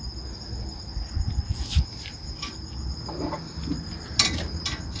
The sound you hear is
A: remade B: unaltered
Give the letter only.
B